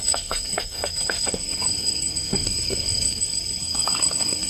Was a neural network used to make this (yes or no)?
yes